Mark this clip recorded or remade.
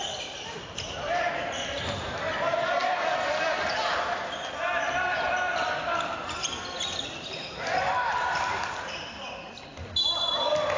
remade